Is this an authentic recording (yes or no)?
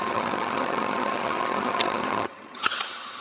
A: no